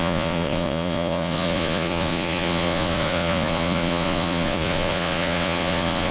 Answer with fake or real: fake